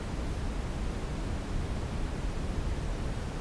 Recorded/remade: recorded